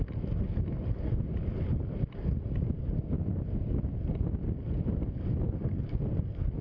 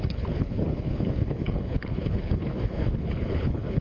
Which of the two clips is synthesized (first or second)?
second